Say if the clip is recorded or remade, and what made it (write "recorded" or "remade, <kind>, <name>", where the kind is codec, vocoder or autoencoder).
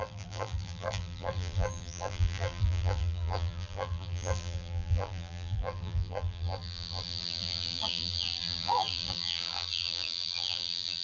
remade, vocoder, BigVGAN v2